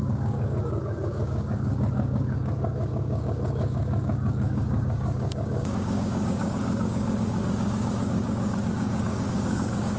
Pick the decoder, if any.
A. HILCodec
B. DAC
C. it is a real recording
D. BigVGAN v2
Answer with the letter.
B